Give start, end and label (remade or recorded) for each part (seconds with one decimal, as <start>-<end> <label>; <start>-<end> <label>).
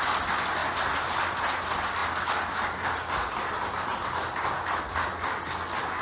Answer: 0.0-6.0 recorded